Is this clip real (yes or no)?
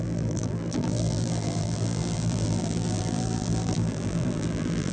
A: no